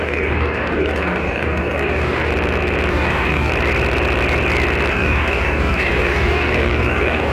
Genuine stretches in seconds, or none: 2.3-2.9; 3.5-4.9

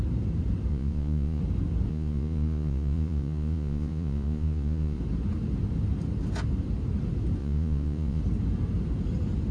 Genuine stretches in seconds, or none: 0.0-0.7; 1.4-1.9; 5.0-7.4; 8.2-9.5

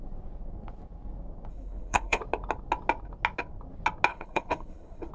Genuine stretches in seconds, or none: 0.0-1.5; 2.2-4.1

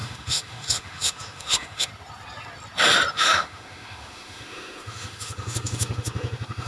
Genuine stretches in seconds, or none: 1.9-3.1

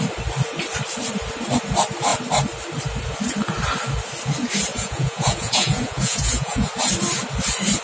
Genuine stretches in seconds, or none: 0.0-4.7; 6.7-7.8

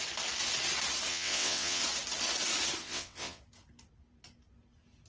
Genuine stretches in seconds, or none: 0.0-1.1; 1.8-2.8; 3.4-5.1

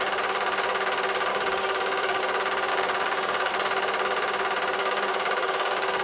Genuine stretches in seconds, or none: 0.0-1.3; 2.2-2.7; 3.5-4.8

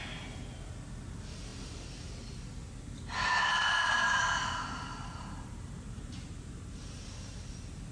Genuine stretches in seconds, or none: 0.0-4.0; 7.5-7.9